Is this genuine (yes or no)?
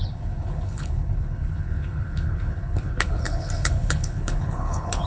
no